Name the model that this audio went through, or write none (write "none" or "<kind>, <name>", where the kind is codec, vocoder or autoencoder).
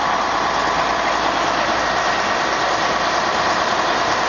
none